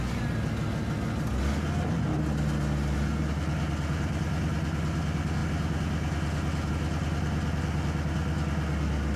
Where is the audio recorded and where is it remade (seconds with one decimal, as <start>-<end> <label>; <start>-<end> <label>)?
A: 0.0-9.2 recorded